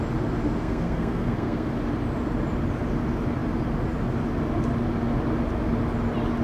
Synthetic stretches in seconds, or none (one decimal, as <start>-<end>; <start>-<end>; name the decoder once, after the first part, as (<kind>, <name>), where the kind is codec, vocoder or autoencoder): 0.6-1.7 (codec, SNAC)